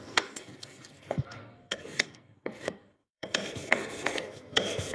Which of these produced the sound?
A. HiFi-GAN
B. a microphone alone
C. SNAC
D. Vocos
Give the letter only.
C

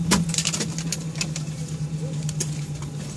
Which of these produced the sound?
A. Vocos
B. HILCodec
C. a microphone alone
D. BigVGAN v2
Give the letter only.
D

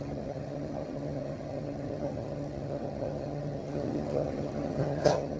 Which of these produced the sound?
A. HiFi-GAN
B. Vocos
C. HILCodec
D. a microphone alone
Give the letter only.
A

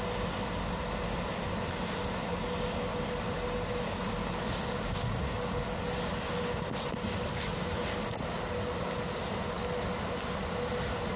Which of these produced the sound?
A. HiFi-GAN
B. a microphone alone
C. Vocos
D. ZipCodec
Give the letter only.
B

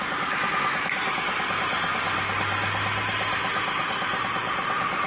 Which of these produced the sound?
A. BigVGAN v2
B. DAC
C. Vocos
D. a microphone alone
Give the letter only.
D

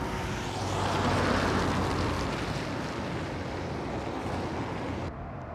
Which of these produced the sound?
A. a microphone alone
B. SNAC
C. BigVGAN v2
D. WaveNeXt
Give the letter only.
A